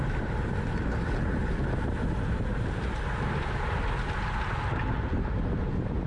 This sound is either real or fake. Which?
real